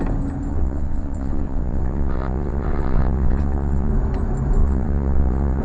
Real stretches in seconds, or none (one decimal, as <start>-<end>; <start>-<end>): 0.0-0.5; 3.9-4.6